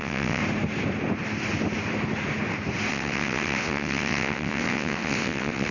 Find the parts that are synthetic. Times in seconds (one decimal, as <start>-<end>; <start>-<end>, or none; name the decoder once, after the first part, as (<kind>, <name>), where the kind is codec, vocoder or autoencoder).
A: 0.0-0.4 (vocoder, WaveNeXt); 2.9-5.7